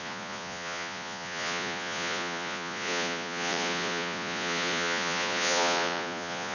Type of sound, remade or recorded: remade